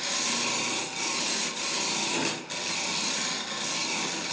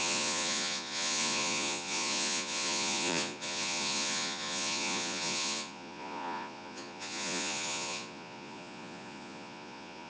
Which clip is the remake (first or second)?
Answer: second